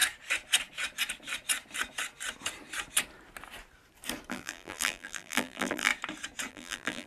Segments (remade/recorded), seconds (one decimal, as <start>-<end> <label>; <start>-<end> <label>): 0.0-4.3 recorded; 4.3-5.9 remade; 5.9-6.5 recorded; 6.5-7.1 remade